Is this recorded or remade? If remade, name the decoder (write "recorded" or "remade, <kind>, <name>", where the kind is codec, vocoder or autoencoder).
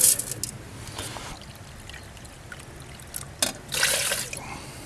recorded